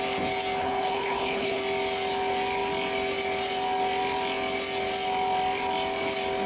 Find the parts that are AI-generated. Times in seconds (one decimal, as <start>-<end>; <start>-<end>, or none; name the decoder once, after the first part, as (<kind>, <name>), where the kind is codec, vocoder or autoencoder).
0.6-1.6 (codec, HILCodec)